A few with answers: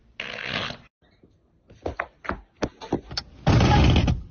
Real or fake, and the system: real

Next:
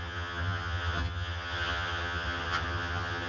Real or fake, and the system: fake, vocoder, HiFi-GAN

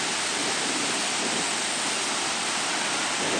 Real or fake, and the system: real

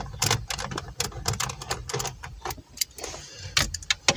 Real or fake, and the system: real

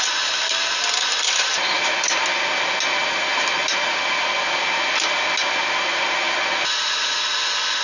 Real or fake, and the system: fake, vocoder, BigVGAN v2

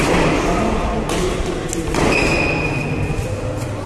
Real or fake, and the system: real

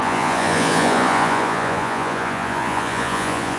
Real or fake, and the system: fake, vocoder, Vocos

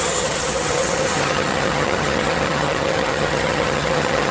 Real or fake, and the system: fake, vocoder, HiFi-GAN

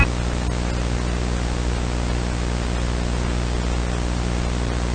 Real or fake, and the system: real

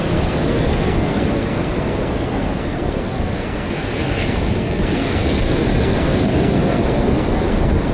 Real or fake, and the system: fake, codec, SNAC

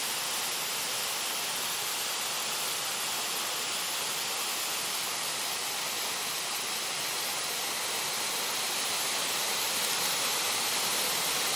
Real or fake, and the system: real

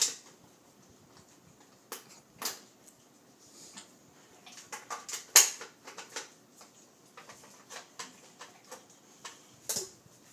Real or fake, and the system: real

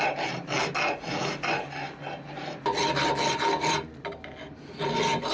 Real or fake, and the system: real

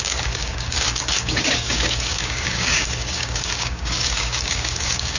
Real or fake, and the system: fake, codec, DAC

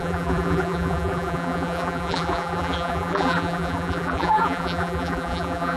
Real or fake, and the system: fake, vocoder, BigVGAN v2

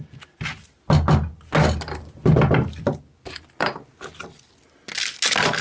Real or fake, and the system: real